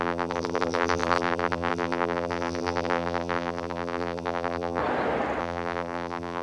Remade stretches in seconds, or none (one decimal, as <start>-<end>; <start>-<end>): 0.0-4.8; 5.4-6.4